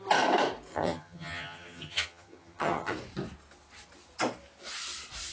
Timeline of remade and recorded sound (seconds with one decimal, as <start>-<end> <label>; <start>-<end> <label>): 0.0-0.7 recorded; 0.7-2.9 remade; 2.9-5.3 recorded